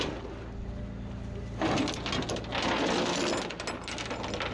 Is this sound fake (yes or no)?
no